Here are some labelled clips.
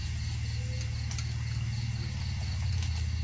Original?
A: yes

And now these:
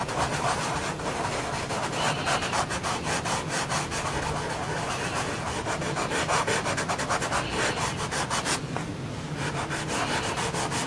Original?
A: yes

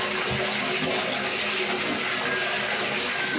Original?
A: yes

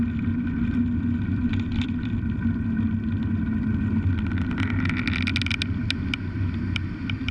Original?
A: yes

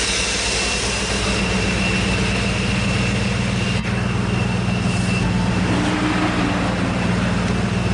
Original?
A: yes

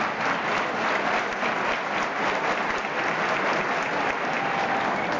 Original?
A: yes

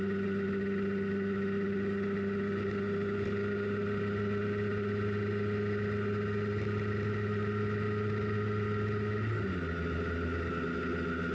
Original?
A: yes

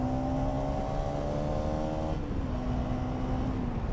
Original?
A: yes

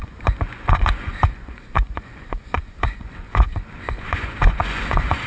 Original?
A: no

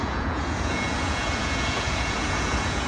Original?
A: no